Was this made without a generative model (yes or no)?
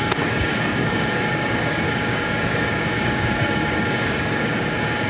no